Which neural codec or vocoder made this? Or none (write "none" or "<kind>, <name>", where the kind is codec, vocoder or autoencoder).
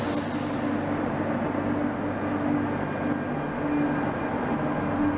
none